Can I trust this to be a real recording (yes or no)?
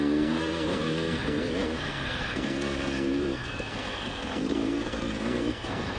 no